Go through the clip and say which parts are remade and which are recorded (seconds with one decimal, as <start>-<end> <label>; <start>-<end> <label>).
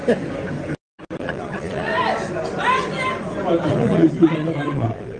0.0-1.2 recorded; 1.2-1.9 remade; 1.9-3.7 recorded; 3.7-5.2 remade